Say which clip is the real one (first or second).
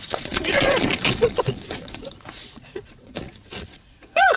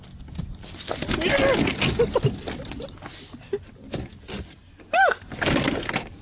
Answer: second